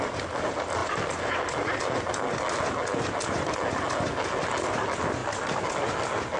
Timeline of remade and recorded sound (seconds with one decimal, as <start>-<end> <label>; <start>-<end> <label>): 0.0-6.4 recorded